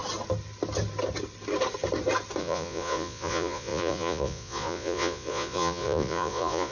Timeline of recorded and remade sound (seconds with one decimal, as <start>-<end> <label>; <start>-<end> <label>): 0.0-2.4 recorded; 2.4-6.7 remade